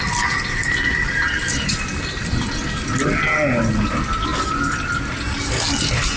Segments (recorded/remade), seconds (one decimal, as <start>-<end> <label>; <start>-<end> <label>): 0.0-6.2 recorded